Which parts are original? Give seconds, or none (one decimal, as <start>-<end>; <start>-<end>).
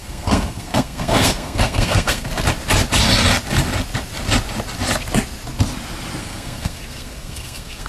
2.3-6.2